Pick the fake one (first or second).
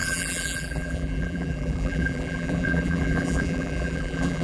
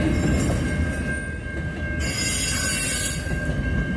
first